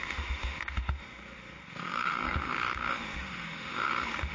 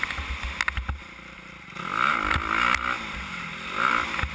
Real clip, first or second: second